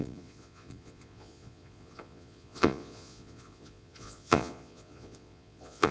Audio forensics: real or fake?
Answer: fake